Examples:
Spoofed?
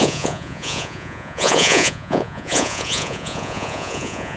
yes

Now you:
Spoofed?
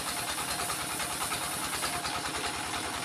no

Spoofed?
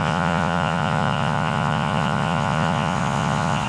yes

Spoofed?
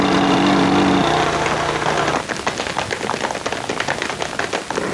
no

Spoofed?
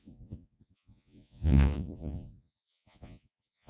yes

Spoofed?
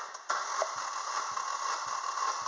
no